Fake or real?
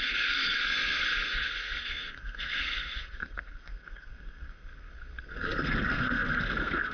fake